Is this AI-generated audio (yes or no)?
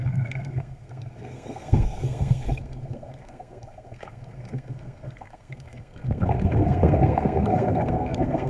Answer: yes